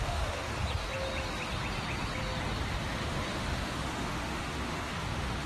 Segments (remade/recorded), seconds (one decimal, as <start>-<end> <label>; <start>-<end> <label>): 0.0-0.5 remade; 0.5-2.7 recorded; 2.7-5.5 remade